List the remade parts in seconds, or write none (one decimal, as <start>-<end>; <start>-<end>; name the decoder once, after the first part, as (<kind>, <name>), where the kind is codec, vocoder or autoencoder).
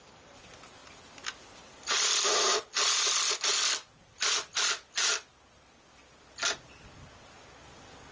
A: none